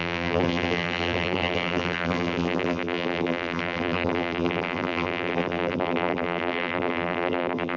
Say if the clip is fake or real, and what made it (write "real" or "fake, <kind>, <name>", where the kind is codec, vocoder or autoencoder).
fake, vocoder, BigVGAN v2